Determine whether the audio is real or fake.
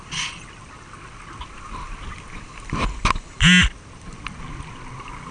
real